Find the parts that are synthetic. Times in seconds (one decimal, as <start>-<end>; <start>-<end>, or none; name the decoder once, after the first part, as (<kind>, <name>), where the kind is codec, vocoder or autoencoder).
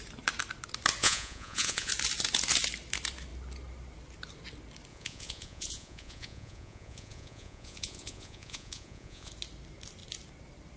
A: 1.0-1.9 (vocoder, Vocos); 4.9-9.3